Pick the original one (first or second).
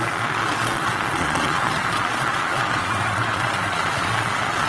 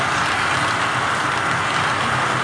second